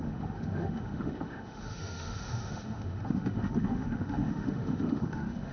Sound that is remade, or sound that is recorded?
remade